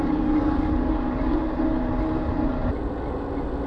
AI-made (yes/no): no